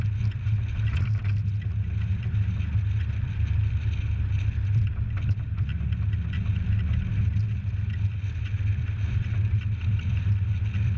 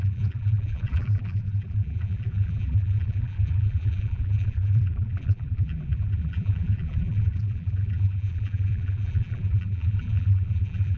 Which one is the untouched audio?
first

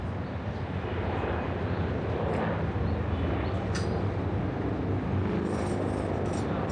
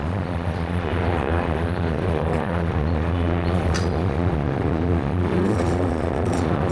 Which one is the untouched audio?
first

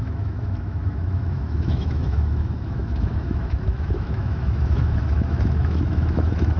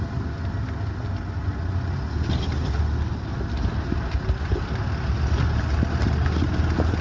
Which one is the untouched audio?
second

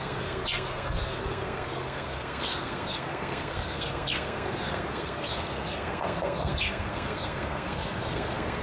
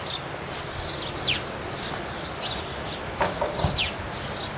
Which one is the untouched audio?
second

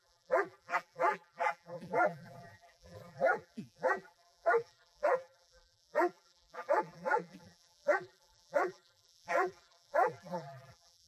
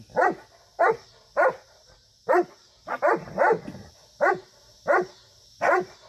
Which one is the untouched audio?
second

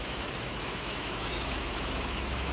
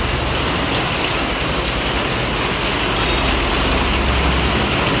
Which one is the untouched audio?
second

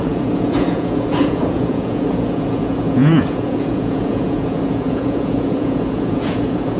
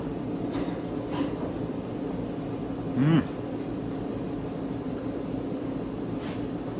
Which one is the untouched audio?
second